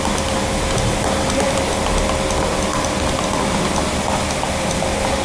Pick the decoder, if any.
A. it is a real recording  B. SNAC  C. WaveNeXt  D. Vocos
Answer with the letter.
A